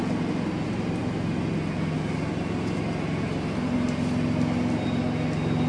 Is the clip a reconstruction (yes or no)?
no